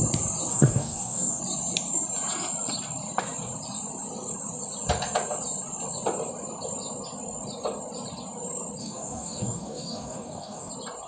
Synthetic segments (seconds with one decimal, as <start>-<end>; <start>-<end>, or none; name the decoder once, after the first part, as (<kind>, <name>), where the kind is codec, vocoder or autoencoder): 0.5-1.4 (codec, DAC); 8.8-10.7